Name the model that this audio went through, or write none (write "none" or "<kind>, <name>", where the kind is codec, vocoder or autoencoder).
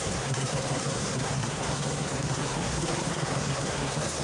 codec, SNAC